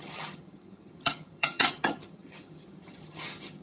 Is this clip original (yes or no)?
no